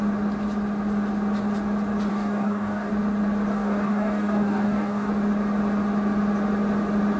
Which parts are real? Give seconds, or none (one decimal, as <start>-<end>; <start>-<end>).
0.0-2.1; 2.9-3.5; 5.1-7.2